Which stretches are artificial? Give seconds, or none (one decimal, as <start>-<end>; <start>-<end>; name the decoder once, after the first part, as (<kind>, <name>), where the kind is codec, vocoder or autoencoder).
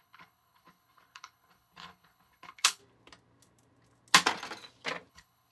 0.0-2.8 (codec, HILCodec); 5.1-5.5